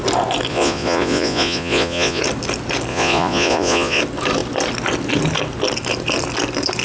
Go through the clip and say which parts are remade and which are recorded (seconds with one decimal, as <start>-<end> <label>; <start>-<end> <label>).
0.0-0.5 recorded; 0.5-2.2 remade; 2.2-2.9 recorded; 2.9-4.0 remade; 4.0-6.8 recorded